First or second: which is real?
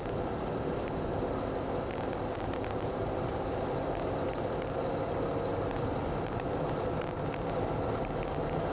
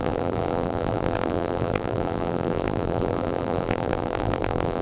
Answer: first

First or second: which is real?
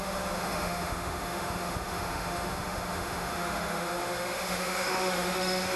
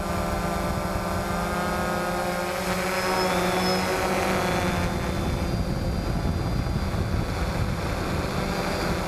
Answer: second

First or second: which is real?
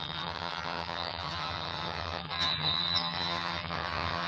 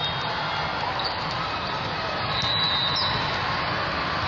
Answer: second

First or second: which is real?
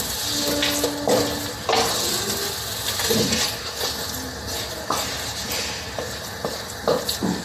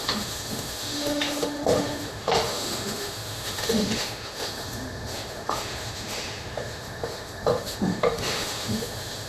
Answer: first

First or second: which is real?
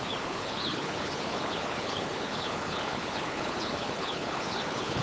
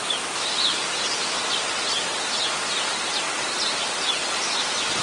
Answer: second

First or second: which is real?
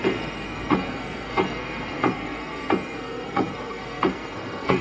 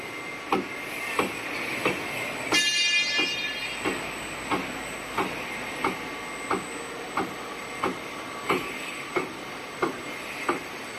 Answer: second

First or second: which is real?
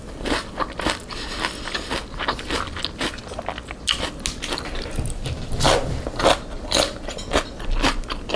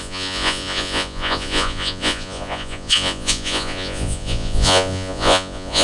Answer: first